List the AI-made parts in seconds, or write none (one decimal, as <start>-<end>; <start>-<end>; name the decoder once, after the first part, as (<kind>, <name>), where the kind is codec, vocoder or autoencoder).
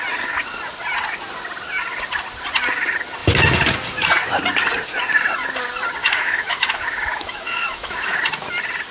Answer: 6.0-8.2 (autoencoder, DAC-VAE)